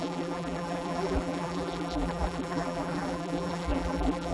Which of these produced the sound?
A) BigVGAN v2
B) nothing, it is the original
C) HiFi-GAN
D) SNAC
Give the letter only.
A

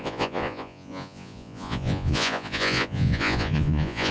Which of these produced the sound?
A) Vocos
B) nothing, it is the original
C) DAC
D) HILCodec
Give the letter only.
A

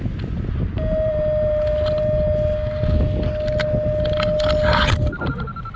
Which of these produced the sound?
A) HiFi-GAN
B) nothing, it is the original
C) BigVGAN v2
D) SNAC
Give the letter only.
B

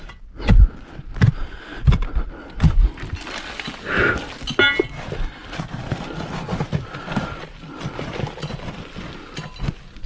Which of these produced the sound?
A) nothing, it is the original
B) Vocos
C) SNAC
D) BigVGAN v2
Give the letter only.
A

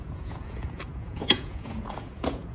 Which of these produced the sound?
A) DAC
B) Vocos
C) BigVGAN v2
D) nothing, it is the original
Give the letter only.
B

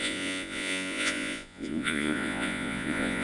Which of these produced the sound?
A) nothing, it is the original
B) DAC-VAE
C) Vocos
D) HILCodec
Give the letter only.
C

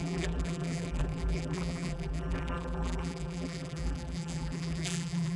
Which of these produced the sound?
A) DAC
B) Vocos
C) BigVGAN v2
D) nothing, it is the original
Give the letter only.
C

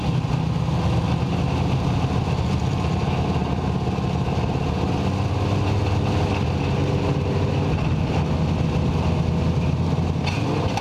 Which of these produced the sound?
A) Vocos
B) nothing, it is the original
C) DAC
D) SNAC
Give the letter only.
B